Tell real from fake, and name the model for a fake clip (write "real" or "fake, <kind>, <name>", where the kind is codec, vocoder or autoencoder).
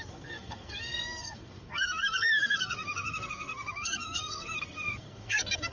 fake, codec, SNAC